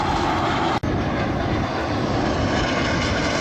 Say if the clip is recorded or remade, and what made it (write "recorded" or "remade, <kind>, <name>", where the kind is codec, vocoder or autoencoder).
recorded